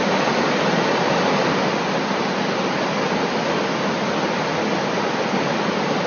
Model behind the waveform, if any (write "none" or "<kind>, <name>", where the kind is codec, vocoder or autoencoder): none